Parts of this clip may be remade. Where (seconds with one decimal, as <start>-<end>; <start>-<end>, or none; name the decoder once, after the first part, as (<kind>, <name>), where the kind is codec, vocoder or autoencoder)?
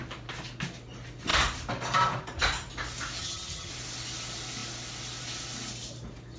3.2-3.7 (vocoder, HiFi-GAN)